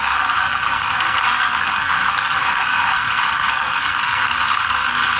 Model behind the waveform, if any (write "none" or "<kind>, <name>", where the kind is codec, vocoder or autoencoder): codec, SNAC